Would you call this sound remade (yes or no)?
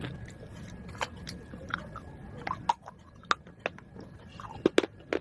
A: no